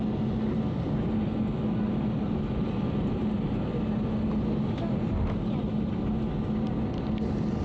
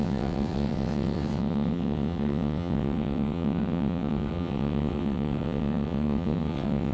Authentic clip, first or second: first